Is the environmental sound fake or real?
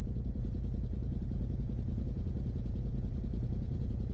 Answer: fake